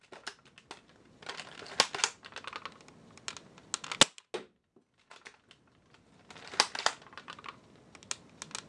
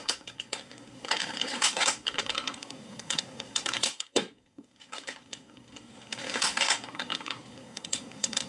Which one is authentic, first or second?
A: first